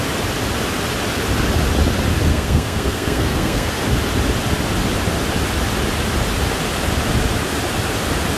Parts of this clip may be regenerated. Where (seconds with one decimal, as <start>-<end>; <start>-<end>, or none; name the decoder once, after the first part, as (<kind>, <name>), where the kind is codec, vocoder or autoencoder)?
2.3-3.7 (codec, SNAC)